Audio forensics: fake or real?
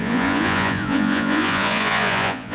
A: fake